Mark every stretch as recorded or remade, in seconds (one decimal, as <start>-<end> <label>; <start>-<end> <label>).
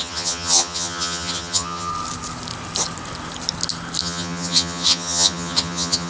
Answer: 0.0-1.9 remade; 1.9-4.0 recorded; 4.0-6.1 remade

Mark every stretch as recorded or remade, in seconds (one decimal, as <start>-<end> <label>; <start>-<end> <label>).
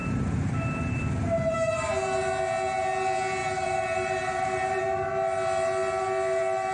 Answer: 0.0-3.4 recorded; 3.4-4.8 remade; 4.8-6.7 recorded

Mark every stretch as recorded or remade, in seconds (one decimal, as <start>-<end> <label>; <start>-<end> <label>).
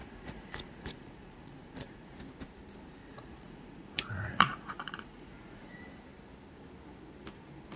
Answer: 0.0-2.2 remade; 2.2-3.0 recorded; 3.0-5.8 remade; 5.8-7.8 recorded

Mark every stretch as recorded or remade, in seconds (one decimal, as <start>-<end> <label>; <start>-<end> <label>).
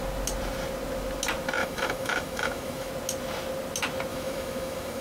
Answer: 0.0-1.6 recorded; 1.6-2.9 remade; 2.9-4.1 recorded; 4.1-5.0 remade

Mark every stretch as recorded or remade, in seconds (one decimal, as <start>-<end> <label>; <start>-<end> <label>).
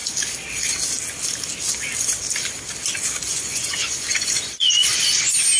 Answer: 0.0-3.3 recorded; 3.3-5.0 remade; 5.0-5.6 recorded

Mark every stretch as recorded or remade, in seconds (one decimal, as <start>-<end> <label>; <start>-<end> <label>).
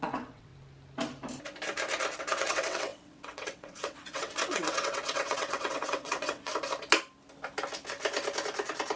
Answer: 0.0-0.5 remade; 0.5-2.2 recorded; 2.2-6.5 remade; 6.5-9.0 recorded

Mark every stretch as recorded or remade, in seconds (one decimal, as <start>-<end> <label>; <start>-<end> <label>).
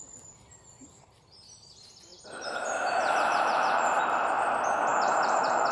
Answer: 0.0-2.1 recorded; 2.1-4.0 remade; 4.0-4.9 recorded; 4.9-5.7 remade